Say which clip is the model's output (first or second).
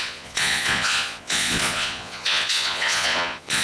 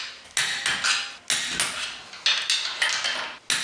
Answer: first